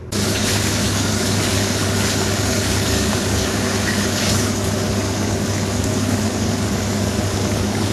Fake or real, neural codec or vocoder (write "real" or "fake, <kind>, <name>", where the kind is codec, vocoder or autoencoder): fake, codec, DAC